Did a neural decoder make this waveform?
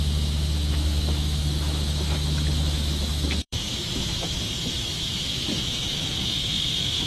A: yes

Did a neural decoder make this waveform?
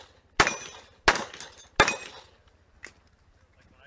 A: no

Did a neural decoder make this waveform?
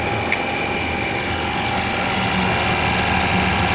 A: no